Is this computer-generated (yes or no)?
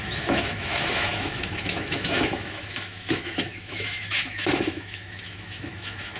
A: yes